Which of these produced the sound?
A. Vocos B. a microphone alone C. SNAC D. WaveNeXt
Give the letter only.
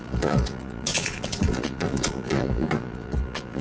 A